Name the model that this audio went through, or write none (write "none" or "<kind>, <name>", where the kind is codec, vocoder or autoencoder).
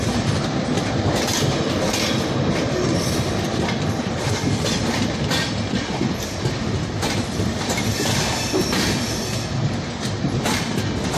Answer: vocoder, BigVGAN v2